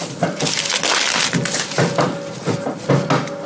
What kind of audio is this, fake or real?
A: real